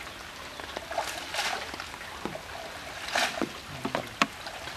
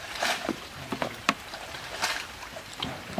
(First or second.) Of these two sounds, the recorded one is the first